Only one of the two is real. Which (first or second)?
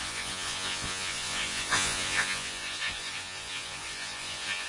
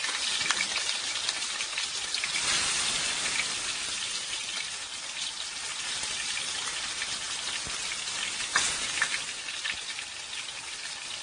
second